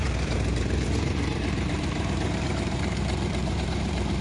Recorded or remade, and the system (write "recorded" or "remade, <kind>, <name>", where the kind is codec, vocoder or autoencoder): remade, vocoder, BigVGAN v2